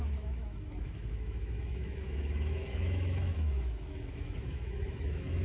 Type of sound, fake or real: fake